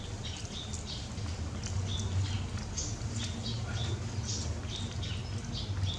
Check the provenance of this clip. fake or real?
real